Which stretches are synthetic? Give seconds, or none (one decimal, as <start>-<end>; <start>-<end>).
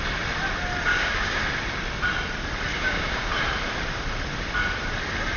0.9-1.4; 2.7-3.3